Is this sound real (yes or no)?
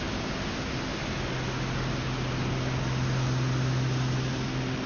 yes